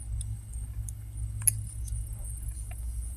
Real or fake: real